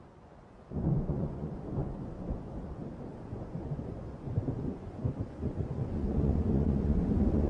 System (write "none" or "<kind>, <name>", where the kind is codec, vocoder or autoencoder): vocoder, Vocos